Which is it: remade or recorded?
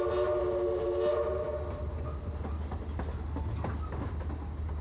recorded